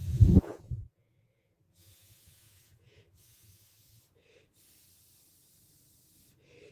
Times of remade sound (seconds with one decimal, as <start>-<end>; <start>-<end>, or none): 0.0-4.0